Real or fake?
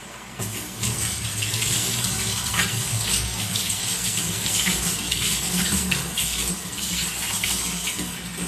fake